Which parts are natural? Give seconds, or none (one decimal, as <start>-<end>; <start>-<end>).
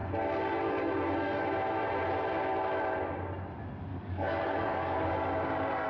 0.0-3.9; 5.1-5.9